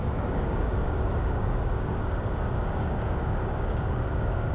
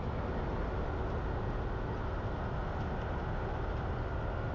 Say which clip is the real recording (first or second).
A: second